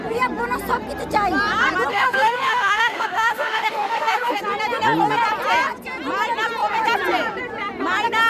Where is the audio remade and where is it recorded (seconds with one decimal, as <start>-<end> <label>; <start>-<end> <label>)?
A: 0.0-1.9 recorded; 1.9-4.4 remade; 4.4-8.3 recorded